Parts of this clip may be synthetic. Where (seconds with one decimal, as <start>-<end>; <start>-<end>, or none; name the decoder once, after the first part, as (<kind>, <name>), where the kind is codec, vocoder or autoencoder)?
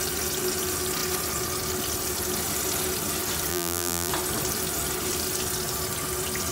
3.5-4.1 (vocoder, BigVGAN v2)